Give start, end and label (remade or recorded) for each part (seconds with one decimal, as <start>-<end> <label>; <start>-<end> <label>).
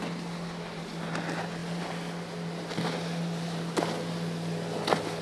0.0-5.2 recorded